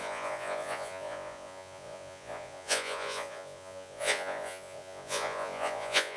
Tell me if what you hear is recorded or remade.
remade